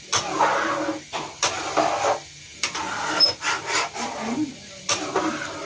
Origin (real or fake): fake